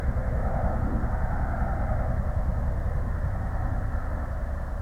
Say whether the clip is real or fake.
real